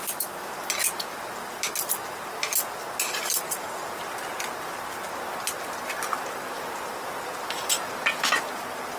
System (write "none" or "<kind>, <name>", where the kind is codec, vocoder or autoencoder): none